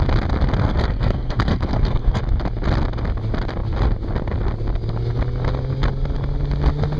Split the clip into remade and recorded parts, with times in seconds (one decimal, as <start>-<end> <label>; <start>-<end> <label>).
0.0-0.6 recorded; 0.6-2.2 remade; 2.2-7.0 recorded